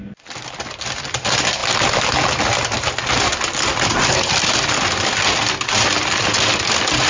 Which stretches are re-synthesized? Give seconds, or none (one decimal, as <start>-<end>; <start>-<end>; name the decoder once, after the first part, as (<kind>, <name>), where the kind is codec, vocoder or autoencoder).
none